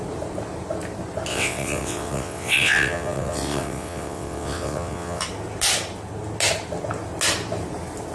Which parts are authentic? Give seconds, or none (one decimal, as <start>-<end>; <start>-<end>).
0.0-1.3; 5.2-8.1